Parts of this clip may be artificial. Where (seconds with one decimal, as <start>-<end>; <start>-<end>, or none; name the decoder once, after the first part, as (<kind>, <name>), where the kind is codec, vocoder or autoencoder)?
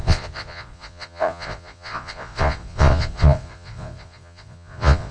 0.0-5.1 (vocoder, Vocos)